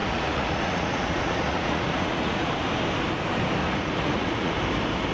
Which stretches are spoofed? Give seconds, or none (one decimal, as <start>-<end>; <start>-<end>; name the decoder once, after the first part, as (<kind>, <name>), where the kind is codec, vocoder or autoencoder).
0.0-2.5 (vocoder, Vocos); 3.6-4.5